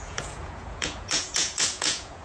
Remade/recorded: remade